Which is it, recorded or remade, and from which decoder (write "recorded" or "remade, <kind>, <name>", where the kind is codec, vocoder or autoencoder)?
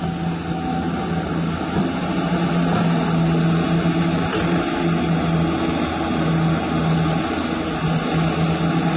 recorded